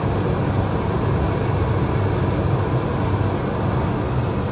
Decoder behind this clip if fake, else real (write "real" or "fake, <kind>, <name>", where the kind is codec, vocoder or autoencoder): real